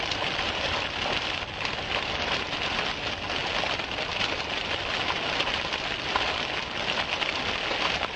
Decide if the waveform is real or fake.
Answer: real